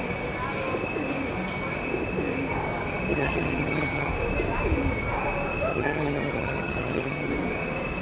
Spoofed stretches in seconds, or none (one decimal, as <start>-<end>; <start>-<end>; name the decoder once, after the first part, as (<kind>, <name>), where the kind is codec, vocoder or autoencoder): 3.1-4.1 (vocoder, HiFi-GAN); 5.7-7.3

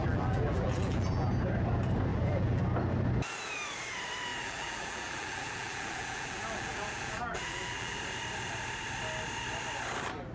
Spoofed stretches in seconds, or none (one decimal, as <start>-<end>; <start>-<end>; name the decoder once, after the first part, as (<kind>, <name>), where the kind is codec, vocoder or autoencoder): 0.0-1.3 (vocoder, BigVGAN v2); 2.1-2.6; 4.3-8.0

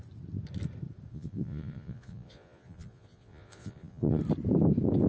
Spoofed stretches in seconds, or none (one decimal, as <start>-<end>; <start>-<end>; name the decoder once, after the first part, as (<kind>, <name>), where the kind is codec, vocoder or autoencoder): 1.1-4.2 (vocoder, Vocos)

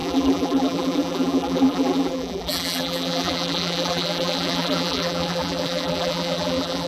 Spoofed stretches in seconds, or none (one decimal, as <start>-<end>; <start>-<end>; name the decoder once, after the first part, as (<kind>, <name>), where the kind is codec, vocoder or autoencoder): 0.0-6.9 (vocoder, BigVGAN v2)

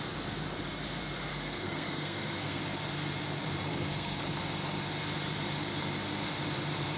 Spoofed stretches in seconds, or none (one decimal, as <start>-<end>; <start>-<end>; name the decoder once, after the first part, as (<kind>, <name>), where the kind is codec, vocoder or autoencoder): 1.3-2.6 (codec, SNAC); 3.7-4.2

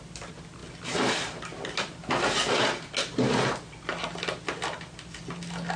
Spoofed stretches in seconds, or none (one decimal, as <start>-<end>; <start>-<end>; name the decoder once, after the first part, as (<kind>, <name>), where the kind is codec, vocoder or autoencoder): none

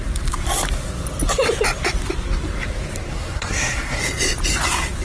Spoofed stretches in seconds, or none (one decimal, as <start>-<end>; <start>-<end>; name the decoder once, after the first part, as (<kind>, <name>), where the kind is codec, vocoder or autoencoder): 3.1-4.0 (codec, SNAC)

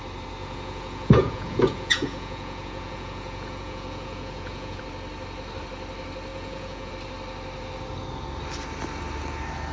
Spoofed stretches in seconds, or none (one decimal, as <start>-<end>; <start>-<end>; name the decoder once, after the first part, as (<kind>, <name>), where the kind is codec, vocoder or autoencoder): 0.4-4.8 (vocoder, Vocos); 6.3-6.9